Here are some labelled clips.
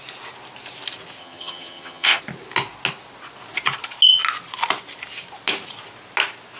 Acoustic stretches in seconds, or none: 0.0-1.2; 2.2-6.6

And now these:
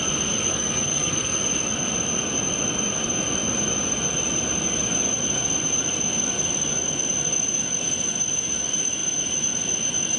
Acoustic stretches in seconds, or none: 0.0-0.5; 1.4-10.2

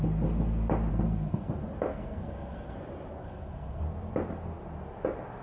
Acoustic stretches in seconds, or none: 0.0-0.9; 1.5-1.9; 2.8-3.2; 3.8-5.4

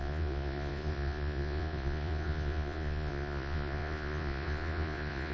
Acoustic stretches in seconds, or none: none

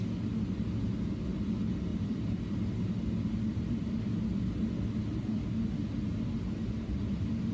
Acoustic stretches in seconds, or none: 0.0-1.9; 4.5-7.5